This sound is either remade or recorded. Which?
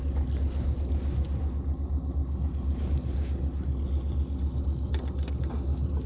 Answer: recorded